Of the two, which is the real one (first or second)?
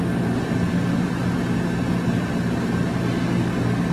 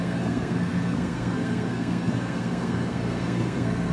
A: first